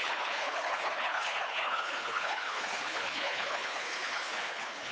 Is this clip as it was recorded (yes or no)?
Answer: no